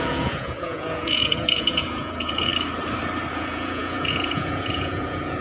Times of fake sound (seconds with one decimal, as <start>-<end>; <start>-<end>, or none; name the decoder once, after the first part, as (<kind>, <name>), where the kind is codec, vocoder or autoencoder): 0.0-2.5 (vocoder, Vocos); 3.3-5.4

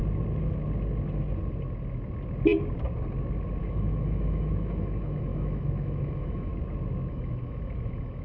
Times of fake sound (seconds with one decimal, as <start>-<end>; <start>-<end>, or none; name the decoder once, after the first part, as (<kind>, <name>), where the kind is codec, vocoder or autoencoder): 3.6-6.5 (autoencoder, DAC-VAE); 7.1-8.2